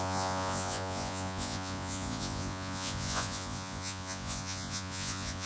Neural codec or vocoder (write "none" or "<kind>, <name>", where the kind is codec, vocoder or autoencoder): vocoder, Vocos